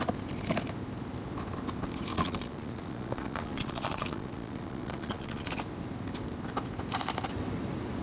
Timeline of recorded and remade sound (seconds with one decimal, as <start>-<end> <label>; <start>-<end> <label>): 0.0-2.1 recorded; 2.1-5.5 remade; 5.5-8.0 recorded